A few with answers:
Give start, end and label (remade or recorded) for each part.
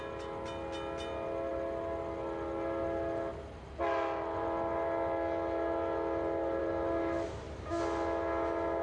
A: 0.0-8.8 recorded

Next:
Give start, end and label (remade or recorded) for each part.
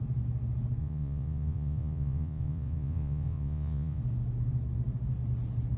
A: 0.0-0.8 recorded; 0.8-4.0 remade; 4.0-5.8 recorded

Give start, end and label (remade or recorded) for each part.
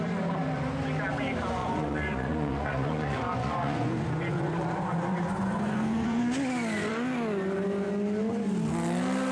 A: 0.0-1.6 recorded; 1.6-6.2 remade; 6.2-9.3 recorded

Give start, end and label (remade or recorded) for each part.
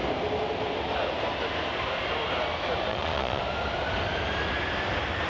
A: 0.0-2.9 recorded; 2.9-3.4 remade; 3.4-5.3 recorded